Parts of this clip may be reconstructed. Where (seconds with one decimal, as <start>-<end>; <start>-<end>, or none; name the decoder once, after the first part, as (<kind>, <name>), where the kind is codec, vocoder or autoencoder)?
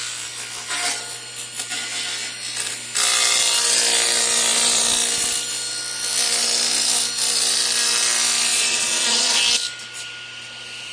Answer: 8.5-9.4 (vocoder, Vocos)